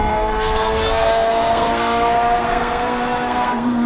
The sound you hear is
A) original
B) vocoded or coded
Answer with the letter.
B